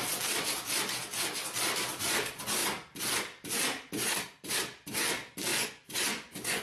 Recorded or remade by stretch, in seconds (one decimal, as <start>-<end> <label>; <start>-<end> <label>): 0.0-5.5 recorded; 5.5-6.6 remade